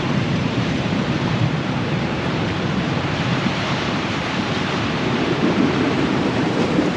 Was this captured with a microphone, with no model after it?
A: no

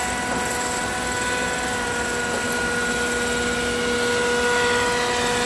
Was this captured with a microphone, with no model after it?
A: yes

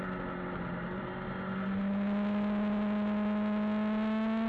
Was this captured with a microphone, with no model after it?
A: yes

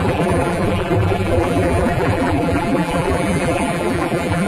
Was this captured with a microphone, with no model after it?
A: no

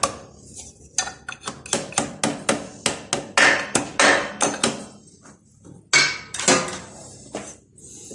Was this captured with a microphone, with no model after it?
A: yes